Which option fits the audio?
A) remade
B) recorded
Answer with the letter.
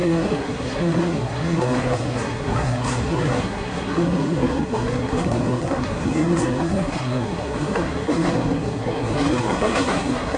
A